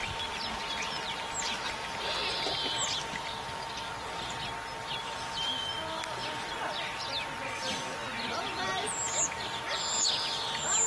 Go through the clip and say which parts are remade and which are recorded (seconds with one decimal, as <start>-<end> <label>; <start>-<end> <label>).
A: 0.0-10.9 recorded